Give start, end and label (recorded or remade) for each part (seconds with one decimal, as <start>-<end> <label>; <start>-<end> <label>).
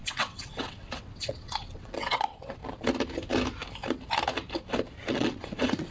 0.0-2.6 remade; 2.6-5.1 recorded; 5.1-5.9 remade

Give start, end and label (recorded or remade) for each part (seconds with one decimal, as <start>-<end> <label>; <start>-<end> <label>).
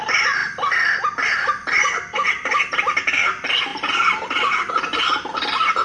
0.0-3.7 remade; 3.7-4.7 recorded; 4.7-5.8 remade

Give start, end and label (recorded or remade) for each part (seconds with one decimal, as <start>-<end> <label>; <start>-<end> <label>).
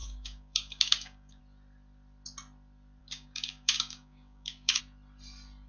0.0-1.4 remade; 1.4-3.0 recorded; 3.0-4.8 remade; 4.8-5.7 recorded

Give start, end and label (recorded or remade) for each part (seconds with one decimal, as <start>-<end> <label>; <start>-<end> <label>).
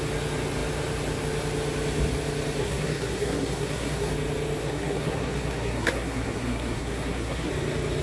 0.0-2.6 recorded; 2.6-4.1 remade; 4.1-4.6 recorded; 4.6-7.5 remade; 7.5-8.0 recorded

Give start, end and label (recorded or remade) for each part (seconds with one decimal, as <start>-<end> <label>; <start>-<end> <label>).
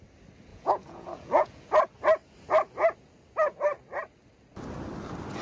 0.0-0.5 recorded; 0.5-1.6 remade; 1.6-5.4 recorded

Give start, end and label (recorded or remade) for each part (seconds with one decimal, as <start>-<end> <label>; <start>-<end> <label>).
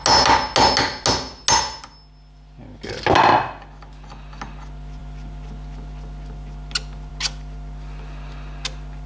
0.0-9.1 recorded